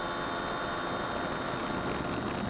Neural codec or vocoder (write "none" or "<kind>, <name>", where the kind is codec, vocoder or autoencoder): none